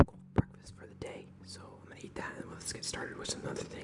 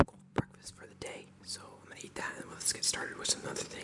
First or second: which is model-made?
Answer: second